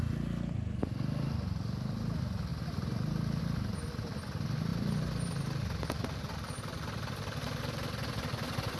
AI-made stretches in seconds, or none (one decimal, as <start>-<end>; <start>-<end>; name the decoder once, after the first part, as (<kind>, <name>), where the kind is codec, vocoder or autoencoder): none